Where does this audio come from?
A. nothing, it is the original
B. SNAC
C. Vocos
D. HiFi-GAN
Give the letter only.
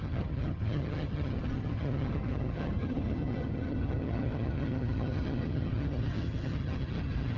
D